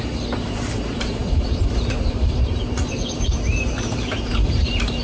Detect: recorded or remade remade